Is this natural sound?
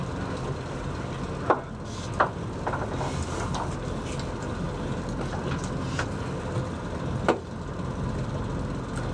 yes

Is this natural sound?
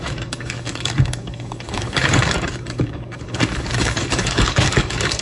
no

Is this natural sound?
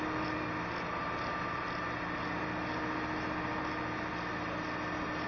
yes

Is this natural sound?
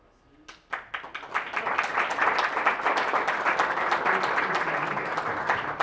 yes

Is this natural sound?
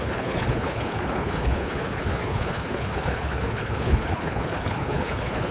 no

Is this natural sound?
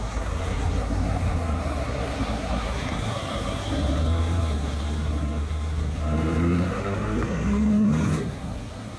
no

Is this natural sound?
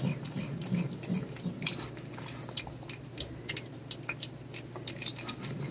yes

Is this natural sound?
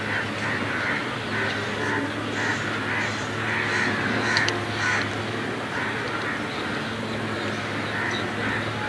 yes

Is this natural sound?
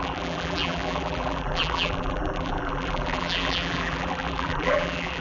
no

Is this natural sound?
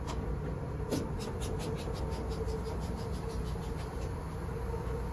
yes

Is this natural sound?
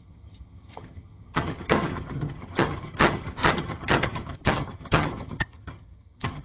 no